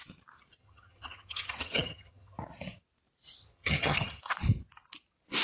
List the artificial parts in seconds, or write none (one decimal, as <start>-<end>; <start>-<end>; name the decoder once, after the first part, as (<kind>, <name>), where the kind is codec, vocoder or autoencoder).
0.6-2.4 (vocoder, HiFi-GAN); 3.4-4.2